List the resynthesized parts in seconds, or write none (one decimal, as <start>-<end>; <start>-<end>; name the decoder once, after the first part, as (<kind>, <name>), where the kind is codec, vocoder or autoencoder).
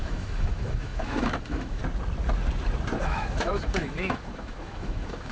0.0-1.8 (autoencoder, DAC-VAE); 3.0-5.3